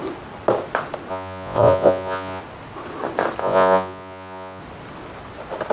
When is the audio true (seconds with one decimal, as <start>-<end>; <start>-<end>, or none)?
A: 0.0-1.1; 2.4-3.4; 4.6-5.7